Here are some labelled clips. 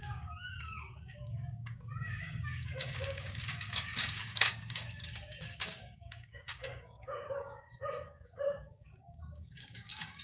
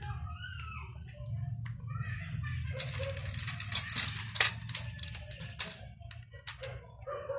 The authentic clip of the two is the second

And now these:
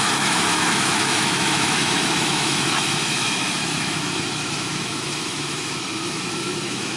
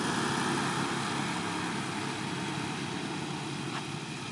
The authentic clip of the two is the second